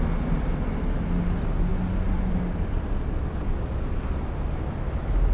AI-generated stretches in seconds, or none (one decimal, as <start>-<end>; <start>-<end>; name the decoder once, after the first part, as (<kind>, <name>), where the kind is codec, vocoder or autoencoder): none